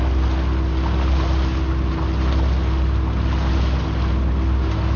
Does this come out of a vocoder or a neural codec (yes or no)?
no